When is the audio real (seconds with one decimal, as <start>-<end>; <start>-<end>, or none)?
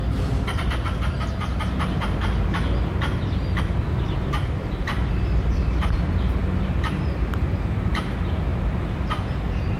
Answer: 6.4-7.8